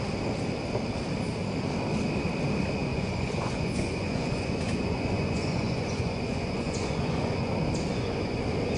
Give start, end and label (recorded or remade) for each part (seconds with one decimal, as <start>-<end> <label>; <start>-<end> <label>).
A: 0.0-2.9 recorded; 2.9-7.5 remade; 7.5-7.9 recorded; 7.9-8.4 remade; 8.4-8.8 recorded